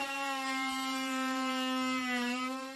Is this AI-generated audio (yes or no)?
yes